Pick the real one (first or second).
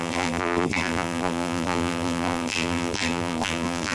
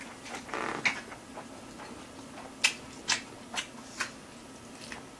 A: second